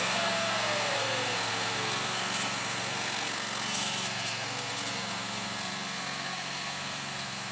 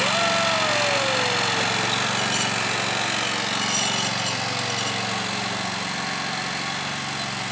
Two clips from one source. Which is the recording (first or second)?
second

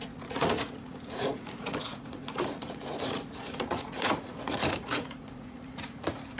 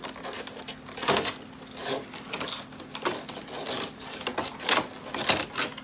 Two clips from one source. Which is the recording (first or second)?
second